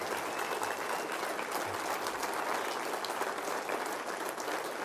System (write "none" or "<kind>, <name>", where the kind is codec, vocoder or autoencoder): none